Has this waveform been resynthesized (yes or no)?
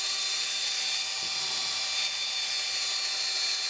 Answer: no